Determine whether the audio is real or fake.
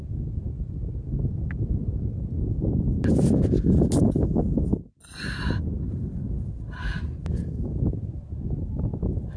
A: real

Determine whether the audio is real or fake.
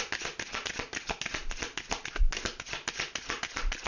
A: real